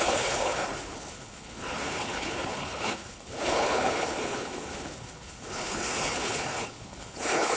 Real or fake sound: fake